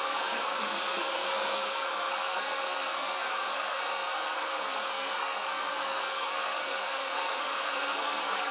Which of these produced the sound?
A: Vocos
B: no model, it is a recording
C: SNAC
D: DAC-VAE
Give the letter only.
C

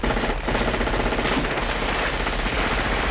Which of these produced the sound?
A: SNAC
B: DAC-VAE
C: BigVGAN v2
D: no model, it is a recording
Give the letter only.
D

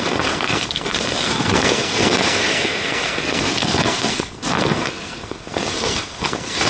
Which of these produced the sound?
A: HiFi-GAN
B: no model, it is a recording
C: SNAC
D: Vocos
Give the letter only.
C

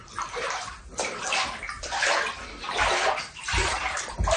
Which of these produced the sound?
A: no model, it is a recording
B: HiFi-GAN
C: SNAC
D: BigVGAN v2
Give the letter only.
A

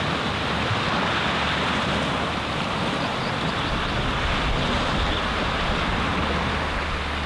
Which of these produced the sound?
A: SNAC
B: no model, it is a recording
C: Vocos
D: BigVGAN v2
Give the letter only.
B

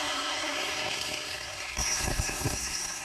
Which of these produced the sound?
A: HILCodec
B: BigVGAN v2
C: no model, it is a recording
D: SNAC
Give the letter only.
D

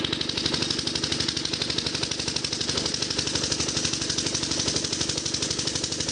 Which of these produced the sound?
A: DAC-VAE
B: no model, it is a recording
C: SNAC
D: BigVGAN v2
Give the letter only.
B